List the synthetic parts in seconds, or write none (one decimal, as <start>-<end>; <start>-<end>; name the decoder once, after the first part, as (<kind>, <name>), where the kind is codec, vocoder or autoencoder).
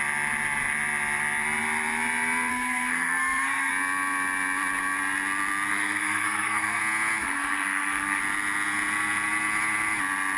2.5-3.7 (codec, SNAC); 5.7-6.8; 7.2-8.2